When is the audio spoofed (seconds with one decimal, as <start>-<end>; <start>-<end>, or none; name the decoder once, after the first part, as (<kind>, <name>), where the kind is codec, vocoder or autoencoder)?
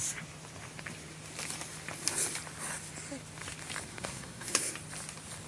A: 3.9-4.7 (codec, SNAC)